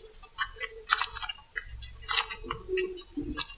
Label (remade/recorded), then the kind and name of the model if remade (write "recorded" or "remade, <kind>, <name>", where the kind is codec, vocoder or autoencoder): recorded